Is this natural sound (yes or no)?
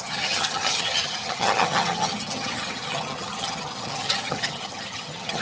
no